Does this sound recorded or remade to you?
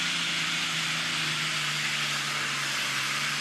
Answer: recorded